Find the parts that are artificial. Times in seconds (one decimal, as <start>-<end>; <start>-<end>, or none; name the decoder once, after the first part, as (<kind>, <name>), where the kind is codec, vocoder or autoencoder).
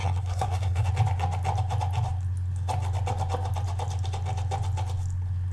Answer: 0.0-0.9 (codec, SNAC)